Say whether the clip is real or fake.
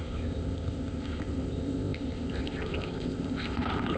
fake